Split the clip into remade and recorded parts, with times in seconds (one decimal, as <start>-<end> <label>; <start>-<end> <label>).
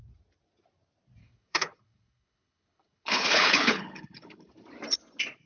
0.0-1.2 recorded; 1.2-4.5 remade; 4.5-5.5 recorded